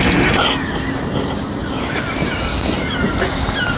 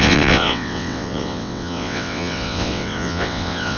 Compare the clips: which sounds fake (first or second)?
second